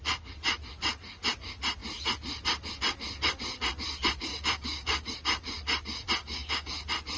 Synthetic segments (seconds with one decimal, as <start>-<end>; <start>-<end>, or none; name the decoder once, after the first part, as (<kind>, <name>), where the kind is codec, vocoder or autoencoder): 4.3-5.1 (codec, DAC); 6.2-6.7